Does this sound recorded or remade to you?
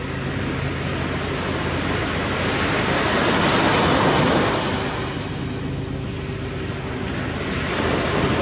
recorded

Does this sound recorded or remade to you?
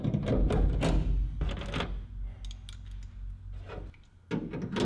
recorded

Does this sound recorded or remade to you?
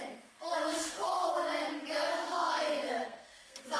remade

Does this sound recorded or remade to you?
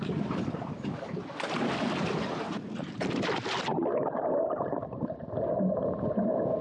recorded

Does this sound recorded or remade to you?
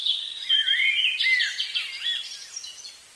recorded